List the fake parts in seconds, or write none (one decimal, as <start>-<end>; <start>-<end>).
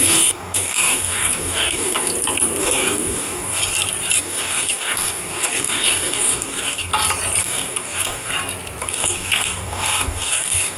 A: 0.0-2.1; 2.6-3.6; 4.2-6.9; 7.4-8.3; 8.8-10.8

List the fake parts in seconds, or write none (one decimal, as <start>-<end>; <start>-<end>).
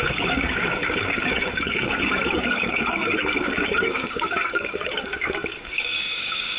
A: 0.0-6.6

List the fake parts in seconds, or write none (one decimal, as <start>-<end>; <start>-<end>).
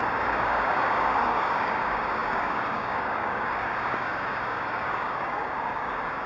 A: 0.0-6.3